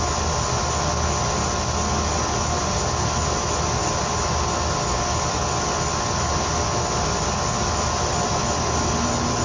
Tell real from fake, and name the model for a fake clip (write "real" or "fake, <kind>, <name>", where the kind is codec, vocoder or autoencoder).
real